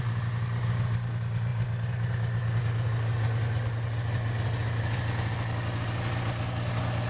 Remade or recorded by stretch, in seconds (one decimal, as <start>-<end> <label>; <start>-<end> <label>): 0.0-7.1 recorded